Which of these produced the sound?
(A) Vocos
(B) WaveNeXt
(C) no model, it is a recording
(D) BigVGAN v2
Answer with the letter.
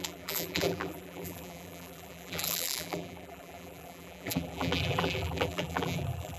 D